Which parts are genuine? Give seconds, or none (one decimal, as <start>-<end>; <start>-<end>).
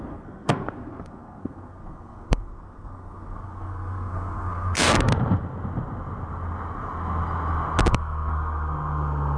5.1-7.9